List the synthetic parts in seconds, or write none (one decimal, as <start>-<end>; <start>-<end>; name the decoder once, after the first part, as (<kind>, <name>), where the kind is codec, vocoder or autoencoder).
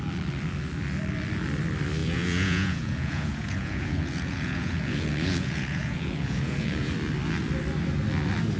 2.0-6.9 (vocoder, Vocos)